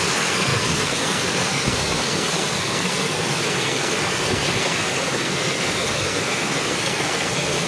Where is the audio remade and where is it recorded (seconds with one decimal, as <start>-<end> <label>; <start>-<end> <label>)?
0.0-7.7 remade

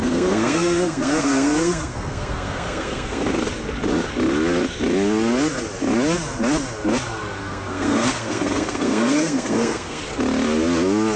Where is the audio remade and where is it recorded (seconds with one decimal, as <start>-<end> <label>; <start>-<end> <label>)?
0.0-3.4 remade; 3.4-7.4 recorded; 7.4-10.0 remade; 10.0-11.2 recorded

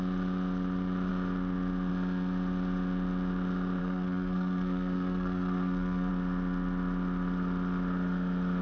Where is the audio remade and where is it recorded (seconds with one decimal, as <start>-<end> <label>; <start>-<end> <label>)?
0.0-3.8 recorded; 3.8-6.1 remade; 6.1-8.6 recorded

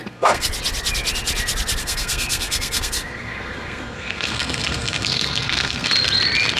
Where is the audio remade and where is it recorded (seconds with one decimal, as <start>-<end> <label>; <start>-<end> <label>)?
0.0-0.5 remade; 0.5-1.8 recorded; 1.8-5.9 remade; 5.9-6.6 recorded